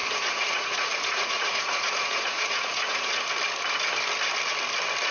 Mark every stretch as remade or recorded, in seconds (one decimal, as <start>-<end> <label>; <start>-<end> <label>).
0.0-3.1 remade; 3.1-5.1 recorded